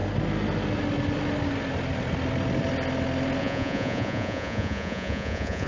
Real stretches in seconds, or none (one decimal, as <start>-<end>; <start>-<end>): 0.0-3.4